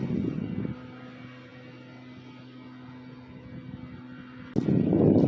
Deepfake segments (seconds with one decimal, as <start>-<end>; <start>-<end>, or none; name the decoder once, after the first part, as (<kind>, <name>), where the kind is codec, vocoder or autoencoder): none